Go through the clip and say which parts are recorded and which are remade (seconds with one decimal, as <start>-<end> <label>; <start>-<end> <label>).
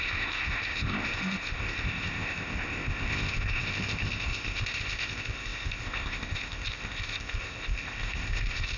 0.0-8.8 remade